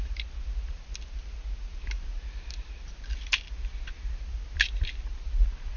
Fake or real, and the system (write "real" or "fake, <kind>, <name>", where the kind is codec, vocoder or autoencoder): real